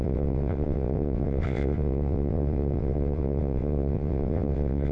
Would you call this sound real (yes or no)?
no